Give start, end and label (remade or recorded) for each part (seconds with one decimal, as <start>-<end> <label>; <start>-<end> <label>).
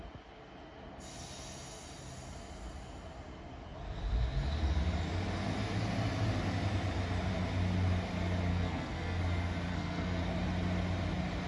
0.0-8.5 recorded; 8.5-9.2 remade; 9.2-9.7 recorded; 9.7-10.2 remade; 10.2-11.5 recorded